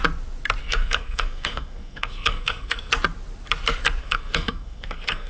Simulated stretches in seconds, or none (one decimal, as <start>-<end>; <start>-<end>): 0.6-2.9; 4.0-5.3